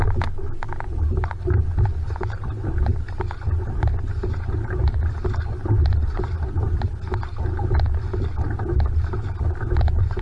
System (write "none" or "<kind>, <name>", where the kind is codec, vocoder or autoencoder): none